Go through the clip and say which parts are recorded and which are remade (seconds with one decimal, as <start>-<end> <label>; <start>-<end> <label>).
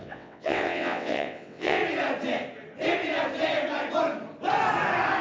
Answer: 0.0-1.8 remade; 1.8-5.2 recorded